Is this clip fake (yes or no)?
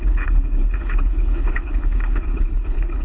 yes